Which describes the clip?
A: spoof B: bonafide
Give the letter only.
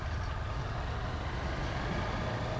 B